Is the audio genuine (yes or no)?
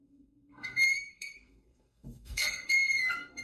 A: no